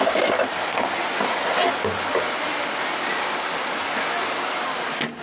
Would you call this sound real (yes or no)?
yes